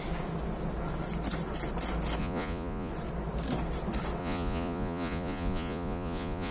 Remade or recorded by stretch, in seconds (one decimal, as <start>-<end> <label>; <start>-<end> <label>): 0.0-2.2 recorded; 2.2-2.9 remade; 2.9-4.2 recorded; 4.2-6.5 remade